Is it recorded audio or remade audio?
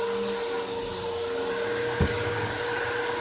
recorded